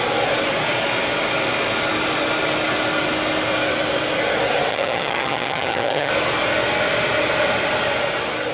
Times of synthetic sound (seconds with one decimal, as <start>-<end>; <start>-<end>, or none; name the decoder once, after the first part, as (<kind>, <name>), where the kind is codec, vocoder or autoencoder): 4.7-6.1 (vocoder, HiFi-GAN)